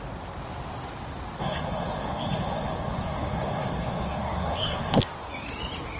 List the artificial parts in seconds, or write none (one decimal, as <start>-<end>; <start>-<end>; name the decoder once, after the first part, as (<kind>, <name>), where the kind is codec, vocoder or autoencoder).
1.4-5.0 (codec, SNAC)